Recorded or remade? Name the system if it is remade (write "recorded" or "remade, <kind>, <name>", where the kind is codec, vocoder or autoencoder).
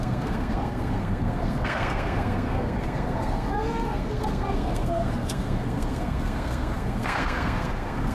remade, codec, SNAC